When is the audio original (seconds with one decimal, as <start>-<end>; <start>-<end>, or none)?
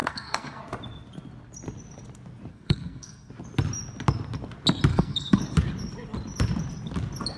0.6-2.5; 3.3-4.9; 5.4-7.4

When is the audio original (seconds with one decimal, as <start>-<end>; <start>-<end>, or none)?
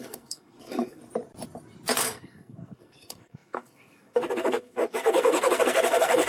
1.0-2.0